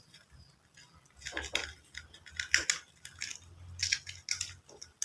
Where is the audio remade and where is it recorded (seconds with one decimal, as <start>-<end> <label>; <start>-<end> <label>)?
0.0-5.0 recorded